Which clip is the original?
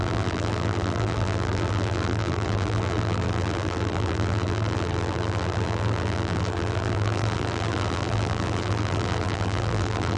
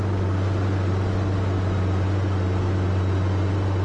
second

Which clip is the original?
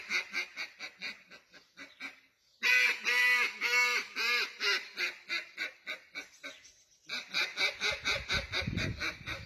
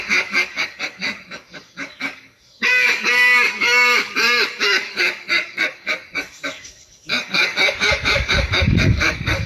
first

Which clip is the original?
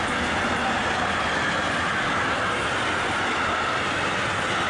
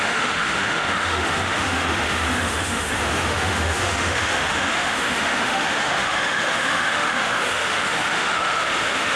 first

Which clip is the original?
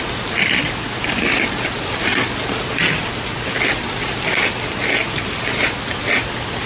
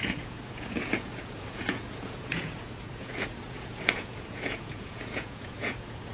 first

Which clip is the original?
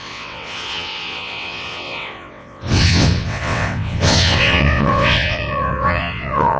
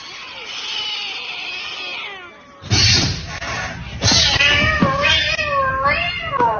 second